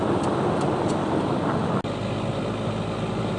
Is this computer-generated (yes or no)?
no